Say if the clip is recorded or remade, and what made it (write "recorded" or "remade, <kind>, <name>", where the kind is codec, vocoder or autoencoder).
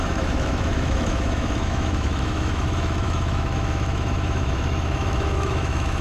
remade, autoencoder, DAC-VAE